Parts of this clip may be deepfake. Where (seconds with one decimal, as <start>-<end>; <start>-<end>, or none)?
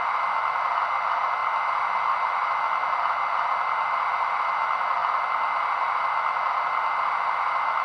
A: none